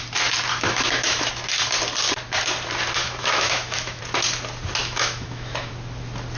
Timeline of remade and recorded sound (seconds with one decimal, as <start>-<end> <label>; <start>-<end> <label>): 0.0-0.5 recorded; 0.5-1.3 remade; 1.3-3.0 recorded; 3.0-4.0 remade; 4.0-4.8 recorded; 4.8-5.7 remade; 5.7-6.4 recorded